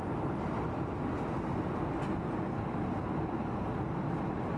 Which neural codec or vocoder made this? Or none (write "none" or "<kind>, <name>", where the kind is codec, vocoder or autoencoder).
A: none